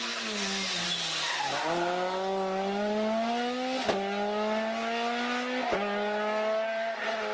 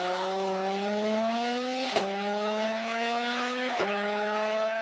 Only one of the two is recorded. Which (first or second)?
first